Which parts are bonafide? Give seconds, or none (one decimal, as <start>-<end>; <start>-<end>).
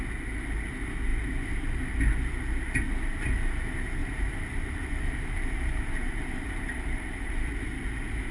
0.0-4.0; 7.3-8.3